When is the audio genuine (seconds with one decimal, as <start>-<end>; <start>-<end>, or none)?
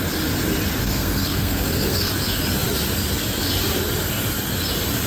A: 0.0-0.8; 2.1-5.1